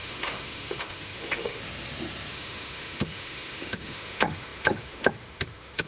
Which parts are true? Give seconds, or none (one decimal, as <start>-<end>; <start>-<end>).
1.6-2.3